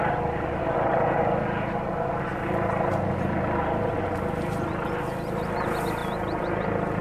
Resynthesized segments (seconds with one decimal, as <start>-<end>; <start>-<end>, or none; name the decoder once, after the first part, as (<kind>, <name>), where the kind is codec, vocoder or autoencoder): none